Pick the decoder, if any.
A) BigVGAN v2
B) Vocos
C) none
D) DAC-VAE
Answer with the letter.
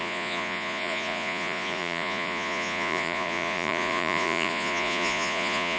B